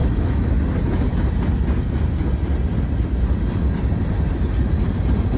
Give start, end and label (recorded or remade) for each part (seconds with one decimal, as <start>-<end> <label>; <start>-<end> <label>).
0.0-0.5 remade; 0.5-5.4 recorded